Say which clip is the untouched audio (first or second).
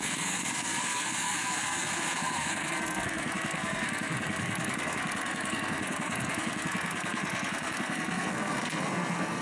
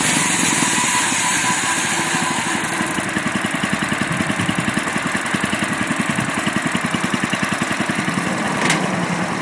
second